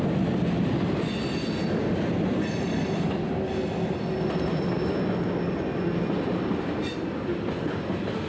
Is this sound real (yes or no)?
yes